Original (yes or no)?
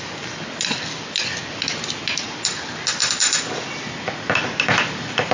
yes